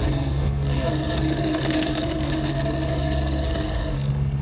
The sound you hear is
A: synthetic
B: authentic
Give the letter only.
A